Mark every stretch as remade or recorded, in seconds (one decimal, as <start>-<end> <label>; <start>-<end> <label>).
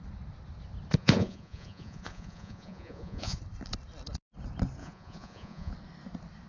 0.0-1.0 recorded; 1.0-3.4 remade; 3.4-4.8 recorded; 4.8-5.7 remade; 5.7-6.5 recorded